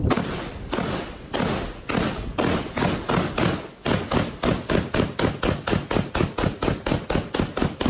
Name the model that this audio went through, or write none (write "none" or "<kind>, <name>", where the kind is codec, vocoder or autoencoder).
none